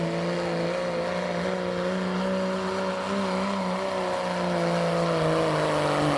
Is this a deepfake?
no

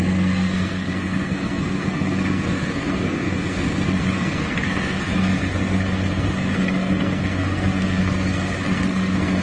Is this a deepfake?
yes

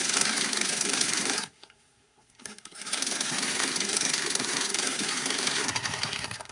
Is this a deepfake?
yes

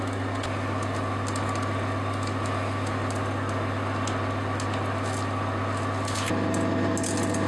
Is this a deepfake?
no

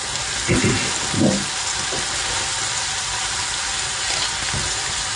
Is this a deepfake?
no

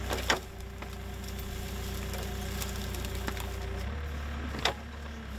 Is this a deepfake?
no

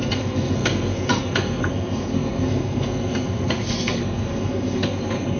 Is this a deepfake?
yes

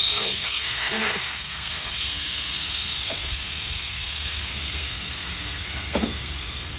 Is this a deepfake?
yes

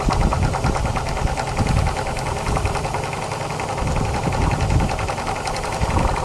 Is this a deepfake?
no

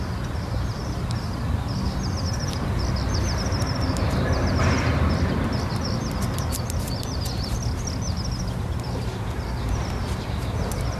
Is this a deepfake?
no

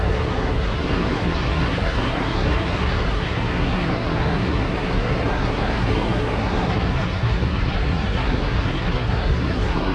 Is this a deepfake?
yes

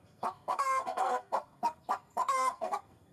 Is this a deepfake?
yes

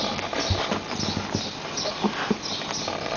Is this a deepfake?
no